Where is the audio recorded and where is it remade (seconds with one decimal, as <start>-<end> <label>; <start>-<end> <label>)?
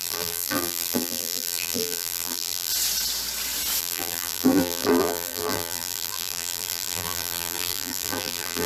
0.0-2.7 remade; 2.7-3.8 recorded; 3.8-8.7 remade